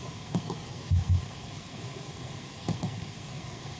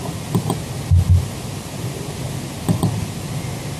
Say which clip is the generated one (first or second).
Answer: first